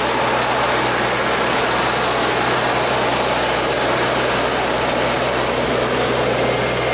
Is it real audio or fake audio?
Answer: real